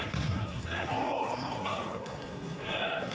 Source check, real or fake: fake